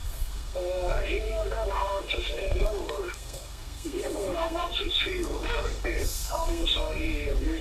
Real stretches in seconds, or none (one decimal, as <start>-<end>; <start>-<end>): none